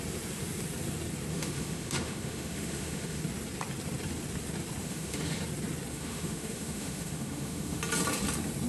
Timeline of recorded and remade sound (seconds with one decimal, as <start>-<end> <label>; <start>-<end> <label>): 0.0-1.3 recorded; 1.3-3.2 remade; 3.2-4.8 recorded; 4.8-5.4 remade; 5.4-5.9 recorded; 5.9-7.8 remade; 7.8-8.7 recorded